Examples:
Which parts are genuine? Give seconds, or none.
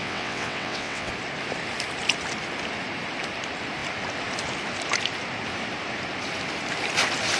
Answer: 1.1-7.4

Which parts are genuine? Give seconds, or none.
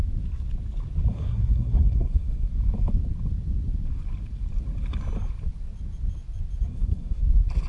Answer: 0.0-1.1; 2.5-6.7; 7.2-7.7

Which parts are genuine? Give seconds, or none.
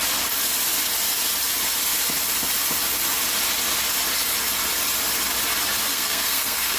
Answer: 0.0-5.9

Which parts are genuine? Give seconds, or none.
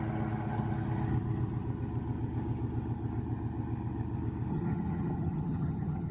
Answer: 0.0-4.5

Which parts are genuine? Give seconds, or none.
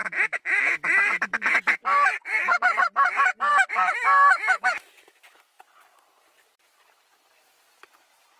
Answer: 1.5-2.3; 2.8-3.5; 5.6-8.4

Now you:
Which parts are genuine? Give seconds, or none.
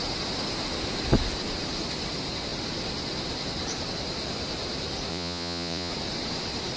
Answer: 0.0-5.1; 5.9-6.8